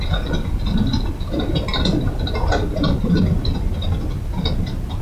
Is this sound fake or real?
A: real